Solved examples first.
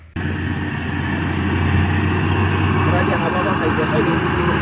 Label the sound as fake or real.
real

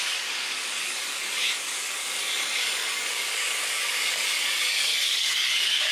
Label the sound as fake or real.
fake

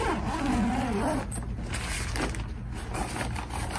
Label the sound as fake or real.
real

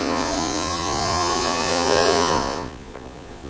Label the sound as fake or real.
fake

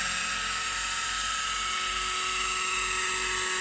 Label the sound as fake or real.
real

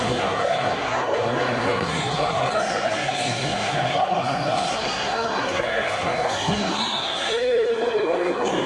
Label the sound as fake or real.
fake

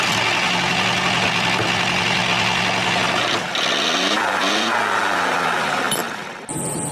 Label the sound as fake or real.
real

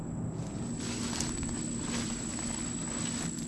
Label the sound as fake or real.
real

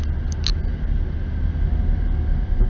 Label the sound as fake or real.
real